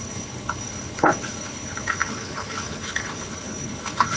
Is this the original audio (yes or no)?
no